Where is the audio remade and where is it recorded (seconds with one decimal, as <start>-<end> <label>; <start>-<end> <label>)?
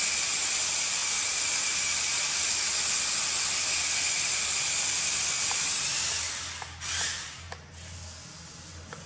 0.0-9.1 recorded